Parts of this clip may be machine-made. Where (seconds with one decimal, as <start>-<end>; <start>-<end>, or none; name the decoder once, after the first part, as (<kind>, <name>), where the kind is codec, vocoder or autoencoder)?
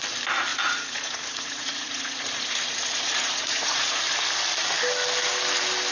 0.5-4.0 (vocoder, Vocos)